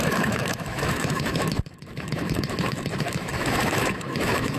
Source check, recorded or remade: remade